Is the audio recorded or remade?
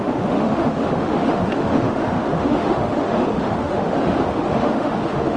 remade